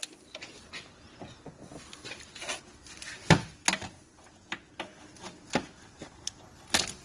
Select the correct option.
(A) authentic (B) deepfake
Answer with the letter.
A